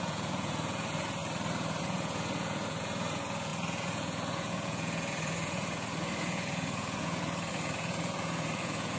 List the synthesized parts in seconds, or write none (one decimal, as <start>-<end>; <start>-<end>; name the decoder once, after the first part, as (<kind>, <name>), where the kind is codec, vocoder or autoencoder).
0.0-1.2 (vocoder, Vocos); 1.8-9.0